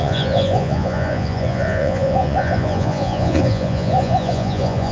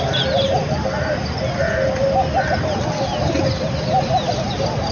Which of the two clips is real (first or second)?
second